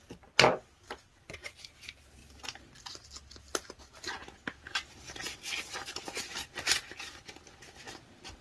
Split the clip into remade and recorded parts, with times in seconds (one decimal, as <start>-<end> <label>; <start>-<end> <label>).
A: 0.0-8.4 recorded